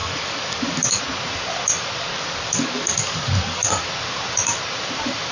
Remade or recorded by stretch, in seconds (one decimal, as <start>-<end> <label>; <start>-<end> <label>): 0.0-1.0 remade; 1.0-2.1 recorded; 2.1-3.9 remade; 3.9-5.3 recorded